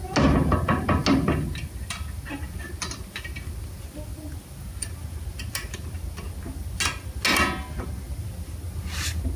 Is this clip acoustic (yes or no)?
yes